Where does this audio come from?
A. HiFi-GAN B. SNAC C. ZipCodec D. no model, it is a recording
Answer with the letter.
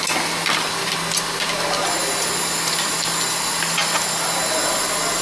D